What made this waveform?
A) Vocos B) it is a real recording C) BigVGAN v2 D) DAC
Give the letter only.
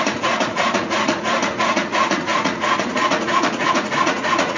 A